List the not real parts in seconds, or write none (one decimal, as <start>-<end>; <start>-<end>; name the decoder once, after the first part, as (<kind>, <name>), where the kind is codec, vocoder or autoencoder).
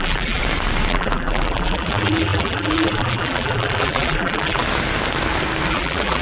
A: 0.0-0.4 (vocoder, BigVGAN v2); 0.9-4.6; 5.7-6.2